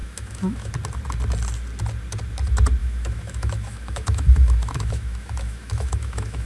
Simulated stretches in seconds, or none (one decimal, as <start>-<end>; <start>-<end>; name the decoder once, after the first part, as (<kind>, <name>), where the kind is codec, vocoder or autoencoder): 0.0-0.7 (autoencoder, DAC-VAE); 2.8-6.5